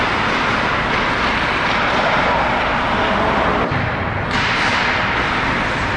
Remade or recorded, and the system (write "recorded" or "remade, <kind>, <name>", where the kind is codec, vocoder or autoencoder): remade, vocoder, BigVGAN v2